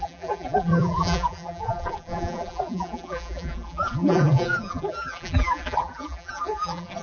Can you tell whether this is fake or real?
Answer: fake